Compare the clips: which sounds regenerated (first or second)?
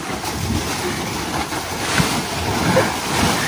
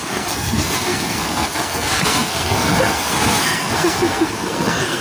second